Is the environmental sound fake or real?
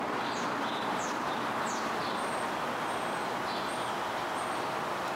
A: real